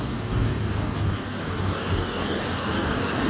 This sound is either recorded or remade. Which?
remade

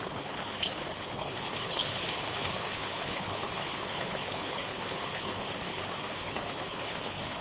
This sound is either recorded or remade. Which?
remade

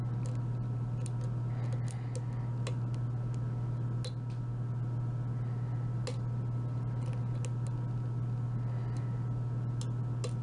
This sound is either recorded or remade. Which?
recorded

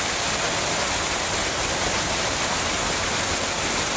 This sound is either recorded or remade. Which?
recorded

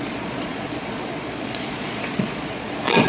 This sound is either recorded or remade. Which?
remade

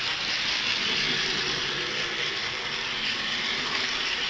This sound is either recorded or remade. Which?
recorded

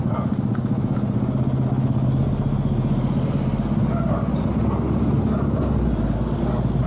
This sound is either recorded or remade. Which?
recorded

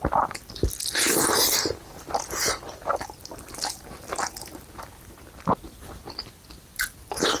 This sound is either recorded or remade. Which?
recorded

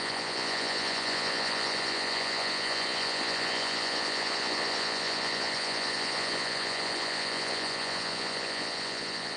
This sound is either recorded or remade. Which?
remade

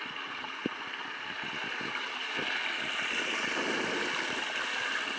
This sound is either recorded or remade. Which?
recorded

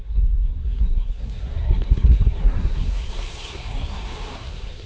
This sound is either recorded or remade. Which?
remade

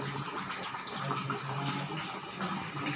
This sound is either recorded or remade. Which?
recorded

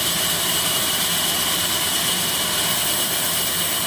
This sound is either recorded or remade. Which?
recorded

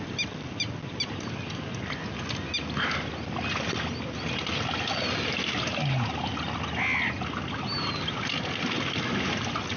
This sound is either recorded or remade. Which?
recorded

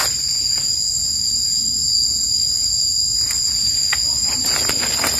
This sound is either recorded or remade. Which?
recorded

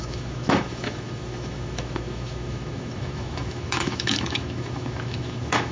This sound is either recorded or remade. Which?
remade